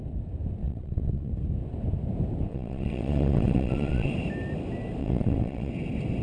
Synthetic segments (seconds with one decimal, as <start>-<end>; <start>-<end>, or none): 0.6-1.3; 2.5-4.1; 5.0-5.7